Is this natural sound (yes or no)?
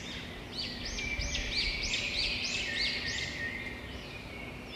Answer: yes